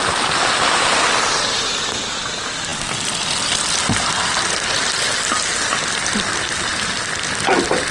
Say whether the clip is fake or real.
real